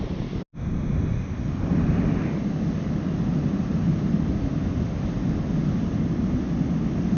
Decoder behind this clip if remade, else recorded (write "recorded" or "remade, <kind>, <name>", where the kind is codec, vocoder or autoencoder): recorded